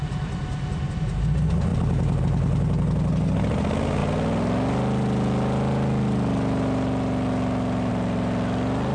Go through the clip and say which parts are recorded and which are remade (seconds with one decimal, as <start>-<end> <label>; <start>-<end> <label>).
0.0-0.9 remade; 0.9-8.9 recorded